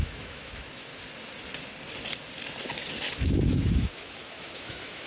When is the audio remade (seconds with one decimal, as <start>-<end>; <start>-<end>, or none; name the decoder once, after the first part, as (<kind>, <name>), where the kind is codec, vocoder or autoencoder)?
0.0-0.9 (autoencoder, DAC-VAE); 3.1-5.1